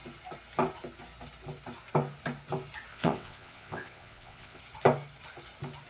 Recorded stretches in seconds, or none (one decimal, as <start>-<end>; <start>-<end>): 0.0-2.9; 4.6-5.9